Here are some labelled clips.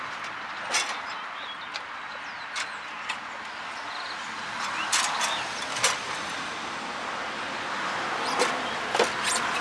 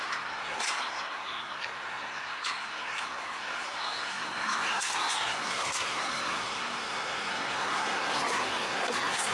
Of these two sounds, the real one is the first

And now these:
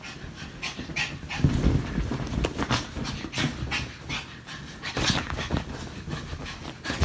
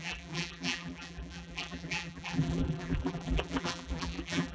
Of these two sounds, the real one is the first